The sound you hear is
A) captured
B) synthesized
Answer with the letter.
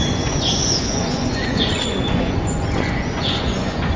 B